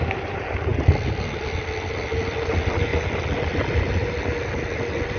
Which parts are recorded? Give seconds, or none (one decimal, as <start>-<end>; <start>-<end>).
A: 0.0-5.2